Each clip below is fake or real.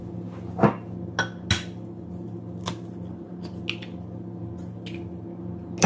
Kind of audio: real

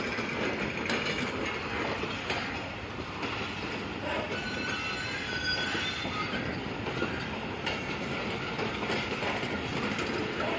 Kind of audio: real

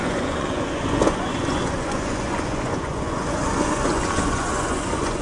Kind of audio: fake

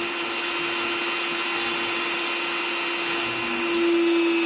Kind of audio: real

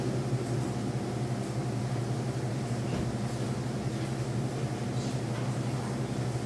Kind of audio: real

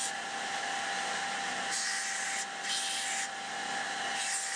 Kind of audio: real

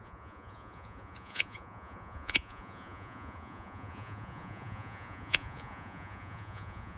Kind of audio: fake